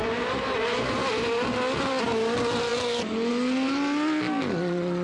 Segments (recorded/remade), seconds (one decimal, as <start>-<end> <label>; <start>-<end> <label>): 0.0-5.0 recorded